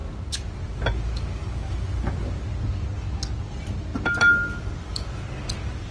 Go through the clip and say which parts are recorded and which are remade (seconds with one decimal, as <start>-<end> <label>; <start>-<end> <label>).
0.0-5.9 recorded